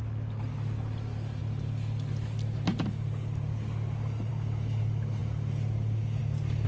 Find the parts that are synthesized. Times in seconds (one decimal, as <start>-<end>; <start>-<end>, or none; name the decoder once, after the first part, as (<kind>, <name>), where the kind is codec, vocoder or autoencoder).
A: none